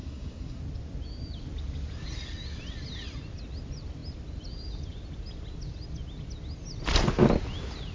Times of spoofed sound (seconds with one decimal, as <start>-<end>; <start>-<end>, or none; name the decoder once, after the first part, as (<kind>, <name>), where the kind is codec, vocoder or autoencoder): 0.0-0.6 (codec, SNAC)